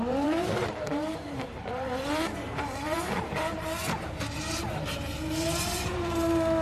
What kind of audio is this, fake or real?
fake